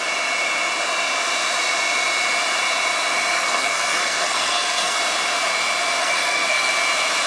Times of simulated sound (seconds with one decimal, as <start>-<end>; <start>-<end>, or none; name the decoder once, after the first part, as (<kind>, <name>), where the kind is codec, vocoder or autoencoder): 3.3-5.0 (codec, SNAC); 6.0-6.7